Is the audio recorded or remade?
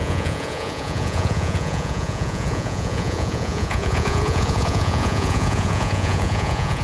remade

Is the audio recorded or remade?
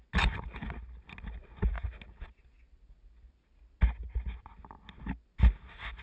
recorded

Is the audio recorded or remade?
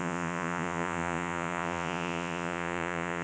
remade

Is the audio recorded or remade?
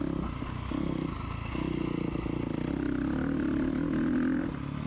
recorded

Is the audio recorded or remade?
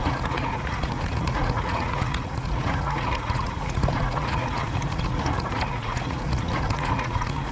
remade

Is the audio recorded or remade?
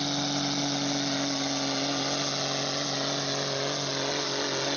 recorded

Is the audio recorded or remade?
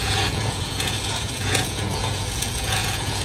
remade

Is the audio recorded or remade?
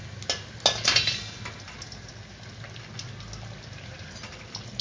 recorded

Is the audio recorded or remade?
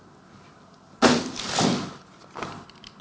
recorded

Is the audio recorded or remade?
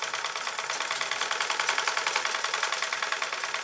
recorded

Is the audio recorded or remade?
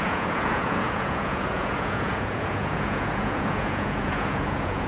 remade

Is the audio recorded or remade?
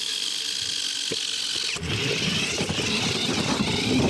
recorded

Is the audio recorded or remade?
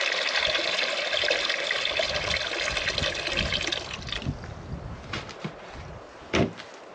recorded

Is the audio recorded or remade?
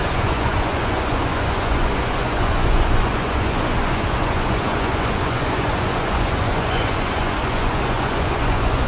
remade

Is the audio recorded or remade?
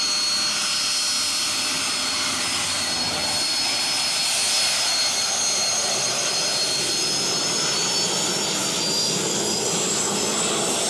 recorded